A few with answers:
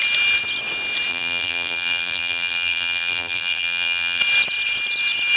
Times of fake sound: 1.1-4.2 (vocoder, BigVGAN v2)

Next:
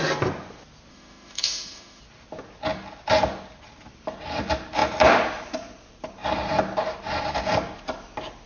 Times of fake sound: 0.9-2.0 (autoencoder, DAC-VAE)

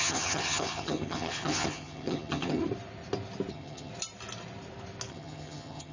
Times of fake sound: 0.0-2.6 (vocoder, HiFi-GAN); 3.5-3.9; 5.1-5.9

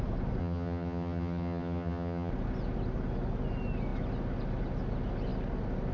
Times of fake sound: 0.4-2.3 (vocoder, HiFi-GAN)

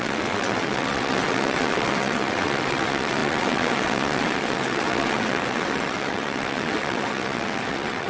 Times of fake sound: 0.0-8.1 (vocoder, WaveNeXt)